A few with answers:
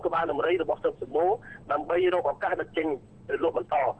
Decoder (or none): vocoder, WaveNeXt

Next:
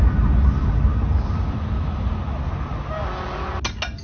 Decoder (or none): none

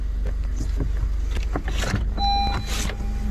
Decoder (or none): none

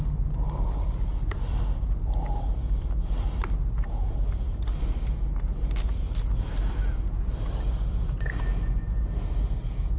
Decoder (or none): vocoder, BigVGAN v2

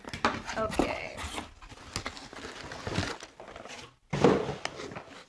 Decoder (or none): none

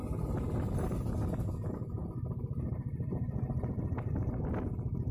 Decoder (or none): none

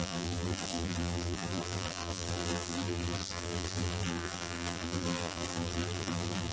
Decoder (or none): vocoder, BigVGAN v2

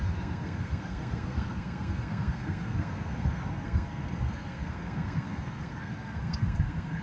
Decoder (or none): codec, SNAC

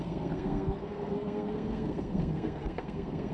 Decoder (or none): codec, SNAC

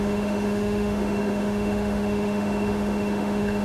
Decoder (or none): autoencoder, DAC-VAE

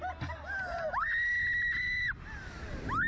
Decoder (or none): none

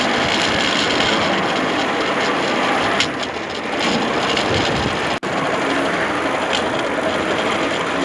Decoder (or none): none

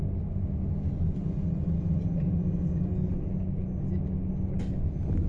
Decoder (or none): none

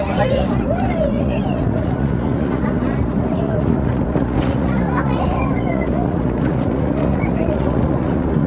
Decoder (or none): vocoder, Vocos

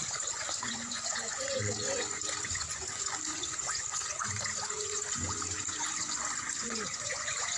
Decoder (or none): vocoder, Vocos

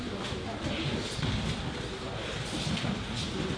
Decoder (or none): none